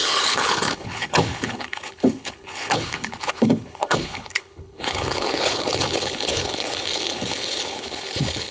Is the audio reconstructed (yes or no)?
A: yes